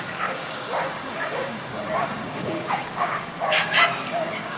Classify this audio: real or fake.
fake